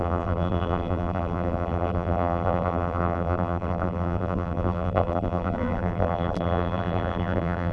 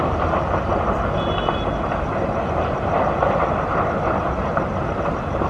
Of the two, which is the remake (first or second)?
first